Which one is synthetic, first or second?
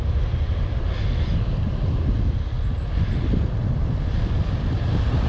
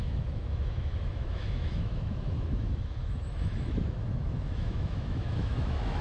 second